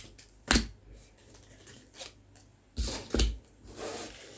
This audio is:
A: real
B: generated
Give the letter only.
A